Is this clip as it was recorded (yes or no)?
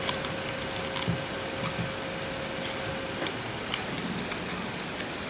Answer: yes